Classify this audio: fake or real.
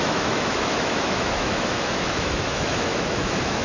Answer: fake